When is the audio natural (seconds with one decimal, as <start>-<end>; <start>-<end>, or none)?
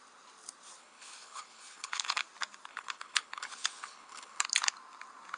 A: 0.0-0.8; 2.2-2.7; 4.4-5.4